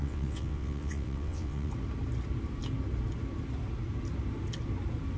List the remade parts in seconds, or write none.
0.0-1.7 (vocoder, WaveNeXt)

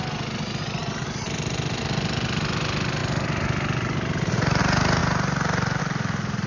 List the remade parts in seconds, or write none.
none

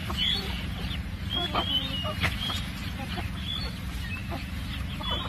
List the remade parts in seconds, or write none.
0.0-3.2 (vocoder, BigVGAN v2)

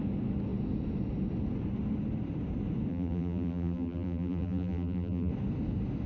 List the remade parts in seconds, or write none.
2.9-5.3 (vocoder, BigVGAN v2)

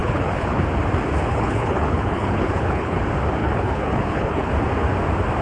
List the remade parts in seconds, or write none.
0.0-0.6 (codec, HILCodec); 1.3-3.0; 3.4-4.5

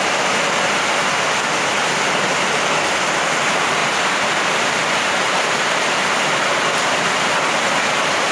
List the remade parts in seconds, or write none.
0.0-3.8 (vocoder, BigVGAN v2); 4.7-8.3